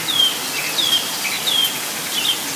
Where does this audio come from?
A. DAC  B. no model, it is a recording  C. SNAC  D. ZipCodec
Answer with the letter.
B